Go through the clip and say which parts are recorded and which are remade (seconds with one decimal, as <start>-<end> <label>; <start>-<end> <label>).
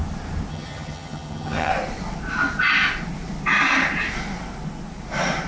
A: 0.0-0.5 recorded; 0.5-1.7 remade; 1.7-5.5 recorded